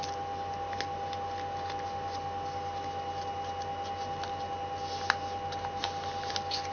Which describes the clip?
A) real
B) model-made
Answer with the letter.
A